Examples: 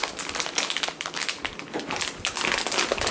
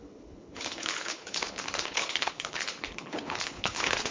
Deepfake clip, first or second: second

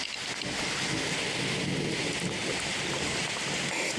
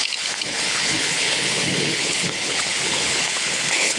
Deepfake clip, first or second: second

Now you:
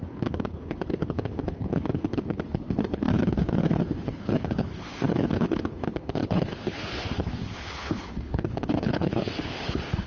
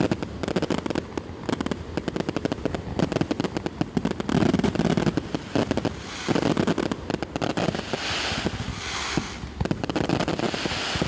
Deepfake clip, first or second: first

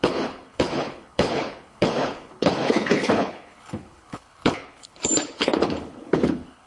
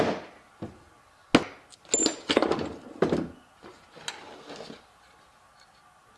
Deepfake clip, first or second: first